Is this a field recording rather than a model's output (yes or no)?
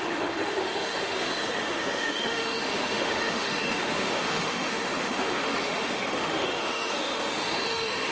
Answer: no